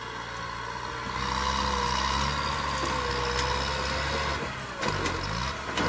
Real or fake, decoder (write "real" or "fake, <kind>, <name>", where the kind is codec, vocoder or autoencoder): real